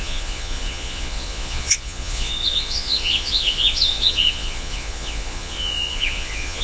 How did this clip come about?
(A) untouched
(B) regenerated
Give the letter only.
B